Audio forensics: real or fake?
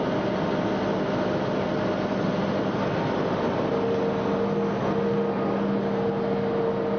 real